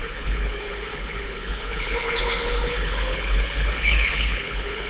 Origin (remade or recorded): remade